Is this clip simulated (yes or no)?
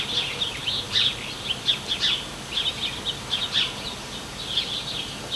no